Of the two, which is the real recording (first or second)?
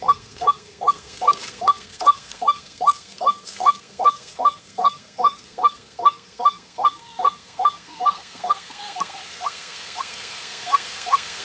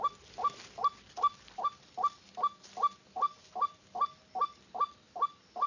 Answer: second